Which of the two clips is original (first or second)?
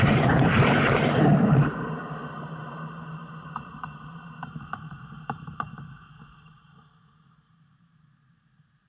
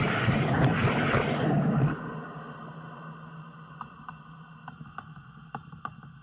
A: second